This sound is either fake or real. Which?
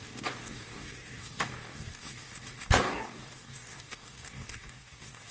fake